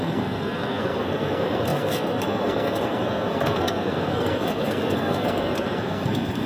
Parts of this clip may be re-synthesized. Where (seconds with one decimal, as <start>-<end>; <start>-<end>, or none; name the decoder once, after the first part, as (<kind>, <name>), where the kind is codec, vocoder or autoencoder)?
0.0-6.5 (codec, SNAC)